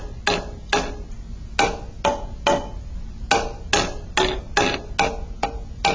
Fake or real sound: real